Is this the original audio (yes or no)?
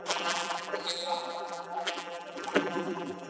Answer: no